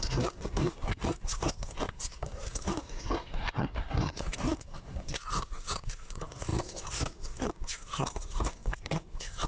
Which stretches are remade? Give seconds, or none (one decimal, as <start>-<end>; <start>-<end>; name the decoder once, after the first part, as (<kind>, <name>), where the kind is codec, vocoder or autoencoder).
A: 0.0-9.5 (codec, SNAC)